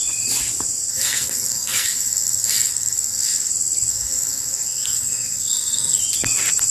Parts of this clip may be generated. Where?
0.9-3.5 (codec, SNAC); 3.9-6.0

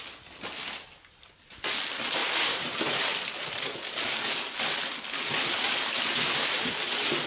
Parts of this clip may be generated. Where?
none